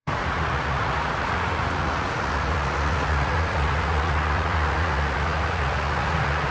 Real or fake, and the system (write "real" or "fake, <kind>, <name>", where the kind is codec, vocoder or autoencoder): fake, vocoder, Vocos